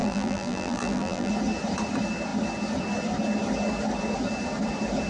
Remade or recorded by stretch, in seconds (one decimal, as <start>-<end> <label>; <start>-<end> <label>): 0.0-1.3 remade; 1.3-5.1 recorded